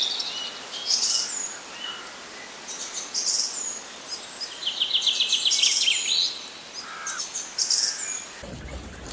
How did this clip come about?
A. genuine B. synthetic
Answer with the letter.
A